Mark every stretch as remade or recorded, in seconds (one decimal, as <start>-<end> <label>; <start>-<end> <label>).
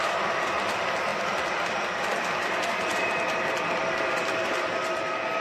0.0-5.4 remade